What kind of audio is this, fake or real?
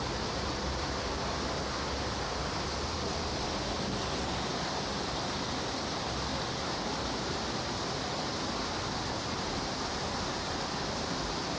real